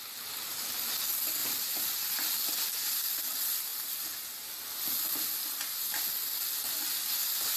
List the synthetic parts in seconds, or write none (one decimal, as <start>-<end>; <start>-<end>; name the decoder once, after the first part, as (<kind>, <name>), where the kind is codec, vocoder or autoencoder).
1.4-1.9 (vocoder, BigVGAN v2)